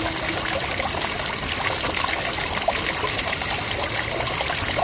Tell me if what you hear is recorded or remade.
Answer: recorded